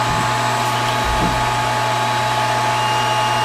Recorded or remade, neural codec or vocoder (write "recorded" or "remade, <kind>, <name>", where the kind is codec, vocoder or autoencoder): recorded